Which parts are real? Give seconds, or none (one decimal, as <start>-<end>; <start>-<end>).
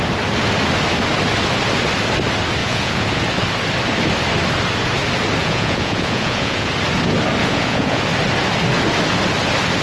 0.0-2.6; 3.2-5.4; 6.7-7.4; 8.0-9.8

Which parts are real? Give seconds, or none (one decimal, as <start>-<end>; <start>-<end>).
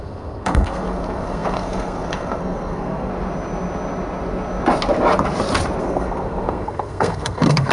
3.1-5.8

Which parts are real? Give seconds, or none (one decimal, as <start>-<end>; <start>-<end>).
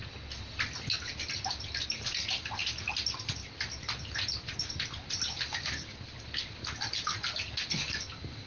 0.0-8.5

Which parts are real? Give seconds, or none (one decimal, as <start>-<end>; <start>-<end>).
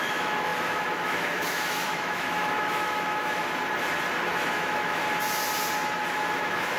3.4-4.3; 5.0-6.1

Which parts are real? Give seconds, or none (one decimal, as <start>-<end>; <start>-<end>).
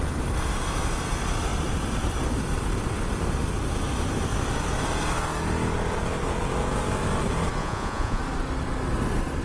0.0-7.6; 8.2-9.4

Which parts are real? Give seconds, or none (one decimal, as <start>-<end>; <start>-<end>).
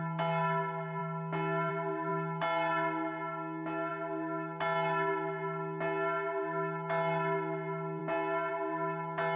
0.0-9.4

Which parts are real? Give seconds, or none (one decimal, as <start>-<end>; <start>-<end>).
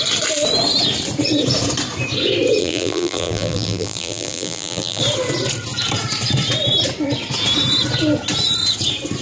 0.0-2.6; 5.0-9.2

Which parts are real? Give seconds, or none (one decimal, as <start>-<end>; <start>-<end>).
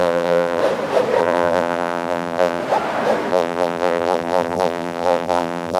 0.6-1.2; 2.6-3.3